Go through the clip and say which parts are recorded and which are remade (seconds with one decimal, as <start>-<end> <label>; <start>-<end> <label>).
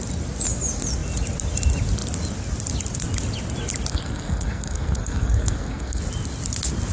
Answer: 0.0-3.9 recorded; 3.9-6.0 remade; 6.0-6.9 recorded